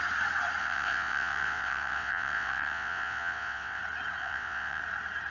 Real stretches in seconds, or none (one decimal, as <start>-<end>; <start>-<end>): 0.0-0.6; 3.8-4.2; 4.8-5.3